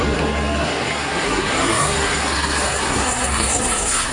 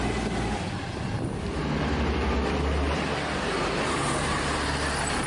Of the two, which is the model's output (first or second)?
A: first